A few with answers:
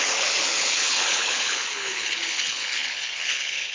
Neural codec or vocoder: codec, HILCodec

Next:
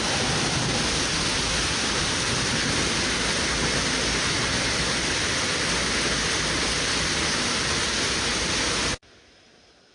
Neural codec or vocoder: none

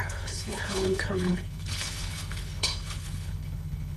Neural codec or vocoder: codec, HILCodec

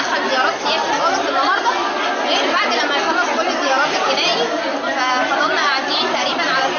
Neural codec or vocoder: none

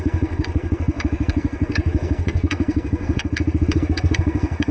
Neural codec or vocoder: codec, SNAC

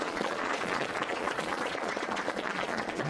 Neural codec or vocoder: vocoder, Vocos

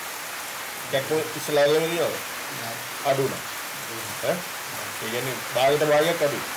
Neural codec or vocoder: none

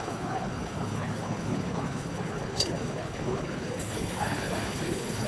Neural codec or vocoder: codec, HILCodec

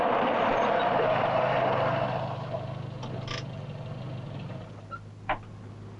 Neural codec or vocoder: none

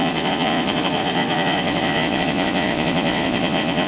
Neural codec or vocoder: vocoder, Vocos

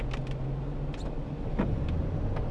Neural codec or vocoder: none